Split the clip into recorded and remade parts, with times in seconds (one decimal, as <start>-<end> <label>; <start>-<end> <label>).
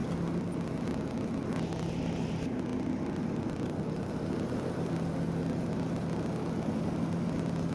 0.0-7.7 recorded